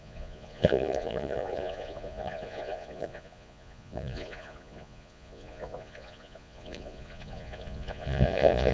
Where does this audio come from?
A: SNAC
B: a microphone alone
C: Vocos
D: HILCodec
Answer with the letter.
C